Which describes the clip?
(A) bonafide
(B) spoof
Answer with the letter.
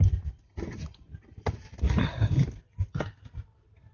A